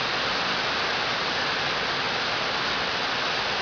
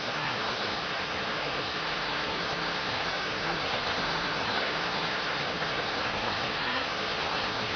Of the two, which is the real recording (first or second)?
first